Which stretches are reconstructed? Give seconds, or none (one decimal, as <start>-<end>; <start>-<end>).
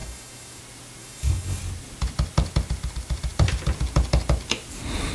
0.0-0.6; 1.0-1.6